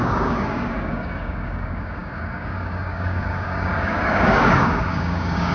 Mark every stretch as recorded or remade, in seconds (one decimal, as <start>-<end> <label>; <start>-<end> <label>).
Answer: 0.0-5.5 remade